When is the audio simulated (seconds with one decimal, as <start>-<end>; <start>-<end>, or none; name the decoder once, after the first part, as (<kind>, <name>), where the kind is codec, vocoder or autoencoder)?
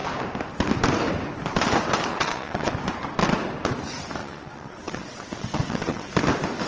2.1-2.7 (vocoder, WaveNeXt); 4.2-6.1